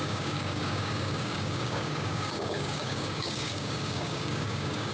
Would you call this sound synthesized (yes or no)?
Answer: yes